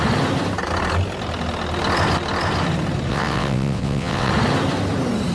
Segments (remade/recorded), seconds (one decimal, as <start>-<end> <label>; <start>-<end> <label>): 0.0-3.1 recorded; 3.1-4.3 remade; 4.3-5.3 recorded